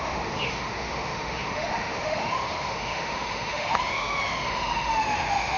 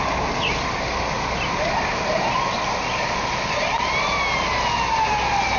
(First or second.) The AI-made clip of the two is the first